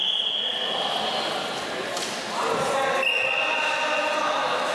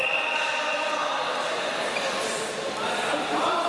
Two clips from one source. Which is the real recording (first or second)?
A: first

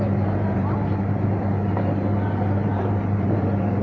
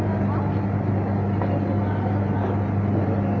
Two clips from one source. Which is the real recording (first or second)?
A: second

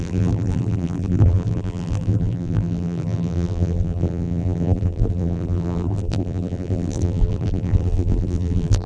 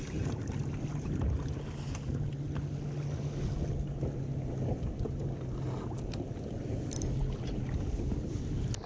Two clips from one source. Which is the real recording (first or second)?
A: second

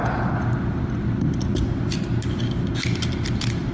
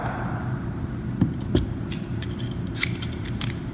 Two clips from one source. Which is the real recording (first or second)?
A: first